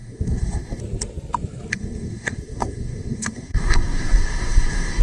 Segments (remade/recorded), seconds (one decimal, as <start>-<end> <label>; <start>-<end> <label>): 0.0-0.8 remade; 0.8-1.7 recorded; 1.7-5.0 remade